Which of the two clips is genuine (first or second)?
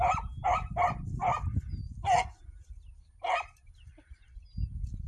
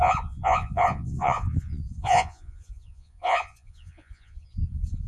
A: first